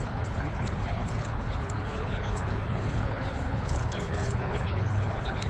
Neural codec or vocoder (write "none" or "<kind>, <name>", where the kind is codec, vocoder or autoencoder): codec, HILCodec